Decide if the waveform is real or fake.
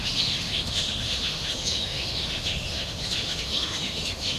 fake